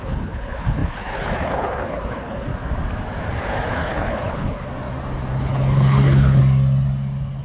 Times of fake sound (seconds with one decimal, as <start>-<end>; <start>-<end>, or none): 0.0-2.5; 3.7-4.7; 5.3-6.4